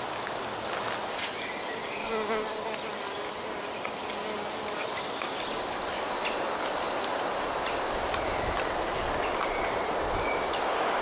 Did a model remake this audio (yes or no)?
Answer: no